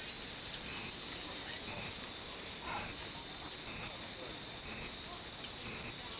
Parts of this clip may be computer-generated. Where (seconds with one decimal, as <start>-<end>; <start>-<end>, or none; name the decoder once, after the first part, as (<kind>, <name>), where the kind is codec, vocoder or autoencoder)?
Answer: none